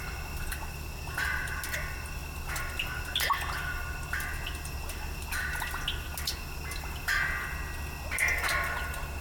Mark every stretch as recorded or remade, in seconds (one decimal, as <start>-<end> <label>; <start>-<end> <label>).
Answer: 0.0-9.2 recorded